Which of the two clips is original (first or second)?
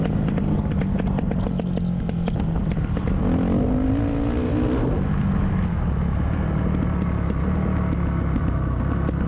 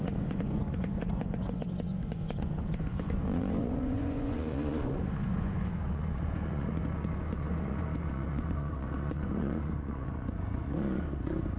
first